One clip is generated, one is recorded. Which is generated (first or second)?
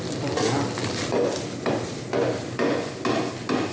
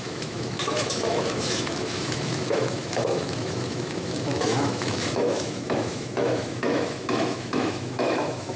second